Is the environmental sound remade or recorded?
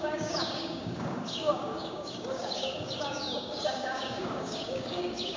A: remade